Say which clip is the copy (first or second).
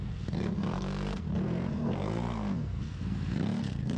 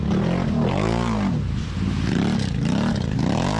first